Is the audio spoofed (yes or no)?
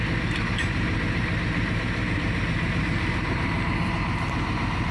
yes